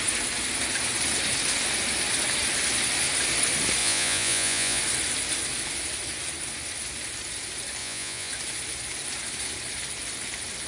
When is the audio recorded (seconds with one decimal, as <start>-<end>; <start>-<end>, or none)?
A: 0.0-3.8; 4.8-7.8; 8.3-10.7